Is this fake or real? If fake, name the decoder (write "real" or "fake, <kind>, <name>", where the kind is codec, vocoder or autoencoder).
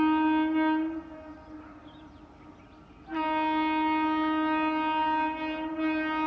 real